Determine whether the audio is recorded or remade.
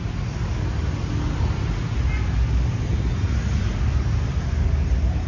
recorded